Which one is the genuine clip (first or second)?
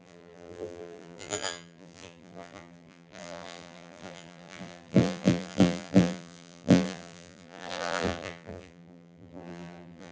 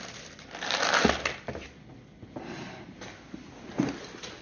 second